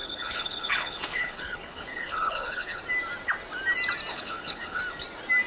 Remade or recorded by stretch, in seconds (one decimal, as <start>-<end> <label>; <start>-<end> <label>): 0.0-2.8 remade; 2.8-4.1 recorded; 4.1-4.8 remade; 4.8-5.5 recorded